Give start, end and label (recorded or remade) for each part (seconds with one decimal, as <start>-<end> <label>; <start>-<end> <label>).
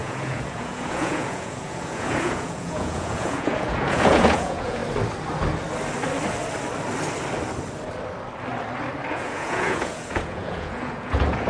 0.0-4.8 remade; 4.8-9.1 recorded; 9.1-11.5 remade